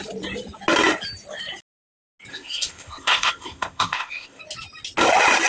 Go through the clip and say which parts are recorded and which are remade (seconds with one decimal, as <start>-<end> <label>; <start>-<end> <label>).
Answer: 0.0-2.3 recorded; 2.3-4.4 remade; 4.4-5.5 recorded